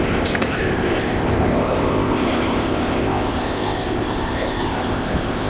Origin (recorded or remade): remade